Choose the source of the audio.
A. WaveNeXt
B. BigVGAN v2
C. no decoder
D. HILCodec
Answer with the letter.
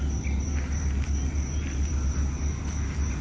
C